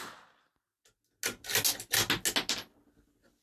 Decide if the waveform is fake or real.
real